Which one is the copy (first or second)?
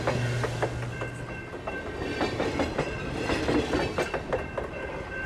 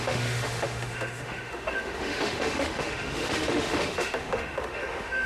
second